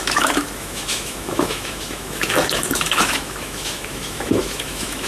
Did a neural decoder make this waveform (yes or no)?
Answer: yes